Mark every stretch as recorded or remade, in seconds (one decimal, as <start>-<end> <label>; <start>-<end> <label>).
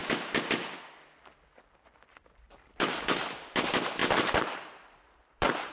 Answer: 0.0-4.0 recorded; 4.0-5.7 remade